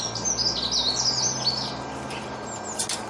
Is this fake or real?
real